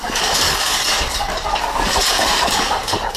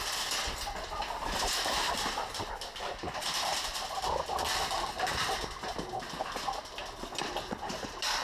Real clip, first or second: second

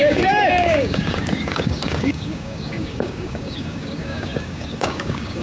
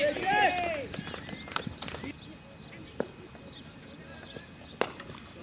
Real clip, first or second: second